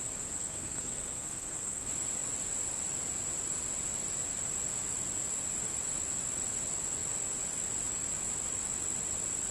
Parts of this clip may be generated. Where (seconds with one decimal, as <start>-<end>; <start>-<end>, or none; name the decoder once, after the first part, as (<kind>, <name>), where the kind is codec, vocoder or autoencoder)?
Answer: 0.4-1.8 (codec, SNAC)